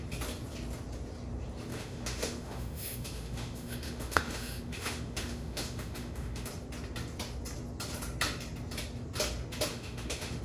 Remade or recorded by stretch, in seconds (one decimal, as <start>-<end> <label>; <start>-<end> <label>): 0.0-1.7 recorded; 1.7-6.5 remade; 6.5-9.7 recorded; 9.7-10.4 remade

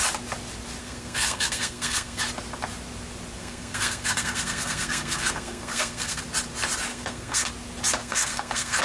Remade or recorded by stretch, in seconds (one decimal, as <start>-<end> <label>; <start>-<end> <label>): 0.0-0.8 recorded; 0.8-2.2 remade; 2.2-3.4 recorded; 3.4-6.2 remade; 6.2-6.9 recorded; 6.9-7.5 remade; 7.5-8.0 recorded; 8.0-8.8 remade